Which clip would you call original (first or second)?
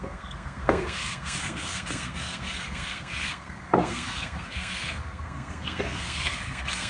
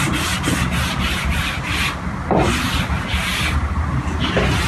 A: second